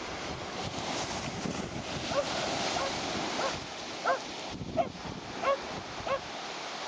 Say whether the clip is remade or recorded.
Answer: recorded